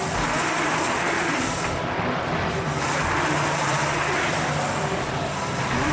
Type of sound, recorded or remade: recorded